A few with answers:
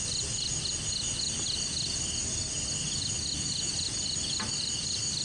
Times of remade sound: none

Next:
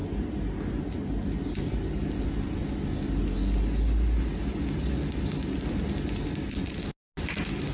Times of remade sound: none

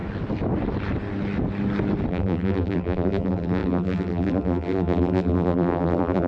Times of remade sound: 2.1-6.3 (vocoder, BigVGAN v2)

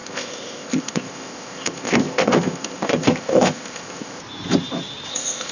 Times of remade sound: 0.0-4.2 (codec, ZipCodec); 5.1-5.5

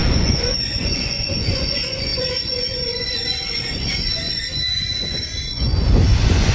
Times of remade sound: 0.0-6.5 (vocoder, Vocos)

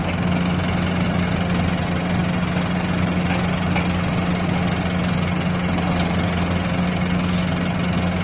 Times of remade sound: none

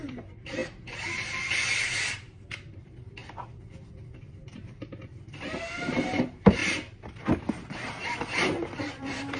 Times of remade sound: 0.0-3.2 (vocoder, BigVGAN v2); 3.9-6.6; 8.8-9.4

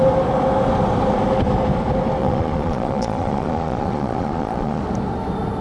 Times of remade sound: 2.2-4.8 (vocoder, Vocos)